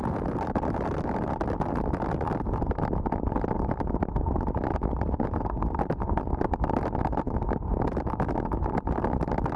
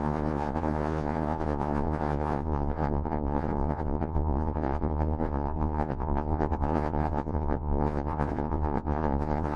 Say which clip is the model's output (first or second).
second